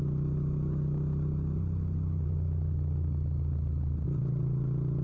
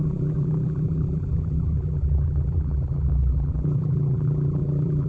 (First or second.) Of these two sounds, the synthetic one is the second